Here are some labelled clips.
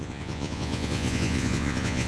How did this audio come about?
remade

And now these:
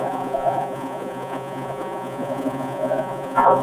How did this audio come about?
remade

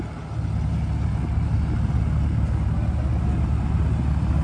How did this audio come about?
recorded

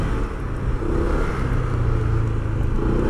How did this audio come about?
recorded